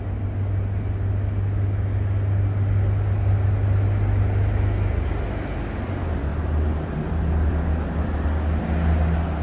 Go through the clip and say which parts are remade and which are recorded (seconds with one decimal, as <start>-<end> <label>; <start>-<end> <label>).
0.0-6.3 recorded; 6.3-8.6 remade; 8.6-9.4 recorded